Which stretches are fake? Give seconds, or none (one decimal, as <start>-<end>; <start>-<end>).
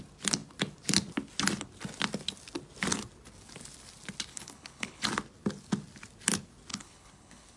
4.3-5.1; 6.7-7.6